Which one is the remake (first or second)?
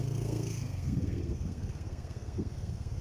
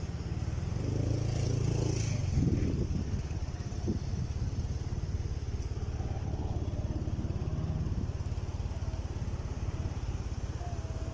first